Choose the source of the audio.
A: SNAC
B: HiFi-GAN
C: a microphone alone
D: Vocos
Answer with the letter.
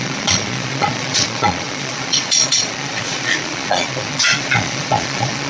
D